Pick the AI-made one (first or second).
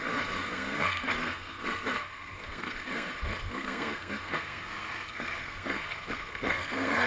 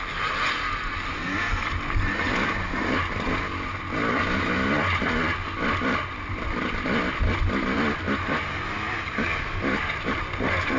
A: first